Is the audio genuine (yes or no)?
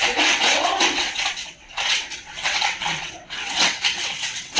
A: no